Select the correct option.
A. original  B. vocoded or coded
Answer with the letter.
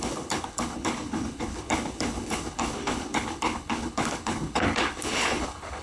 B